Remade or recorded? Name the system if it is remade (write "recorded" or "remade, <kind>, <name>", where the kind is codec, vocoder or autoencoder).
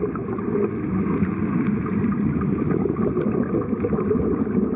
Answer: recorded